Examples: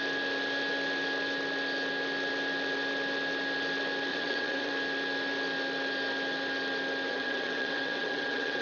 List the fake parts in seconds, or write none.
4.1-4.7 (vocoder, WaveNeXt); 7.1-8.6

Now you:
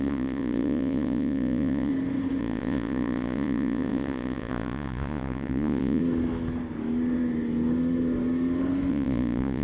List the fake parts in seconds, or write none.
0.0-1.9 (vocoder, Vocos); 2.4-6.0; 8.9-9.6

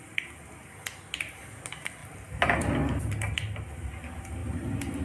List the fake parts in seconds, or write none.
none

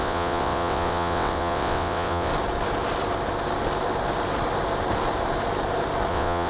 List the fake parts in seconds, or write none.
0.0-2.3 (vocoder, WaveNeXt); 6.1-6.5

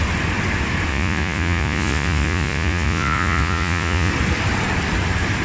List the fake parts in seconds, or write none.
0.9-4.1 (vocoder, Vocos)

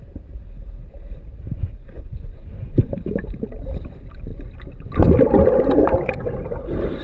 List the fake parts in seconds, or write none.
1.8-2.9 (vocoder, Vocos)